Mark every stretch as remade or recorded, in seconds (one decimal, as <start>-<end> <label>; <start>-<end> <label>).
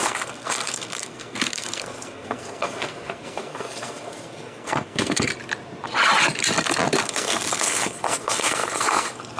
0.0-5.3 remade; 5.3-7.0 recorded; 7.0-9.4 remade